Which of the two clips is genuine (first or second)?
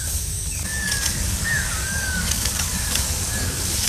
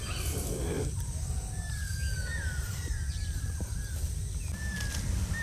second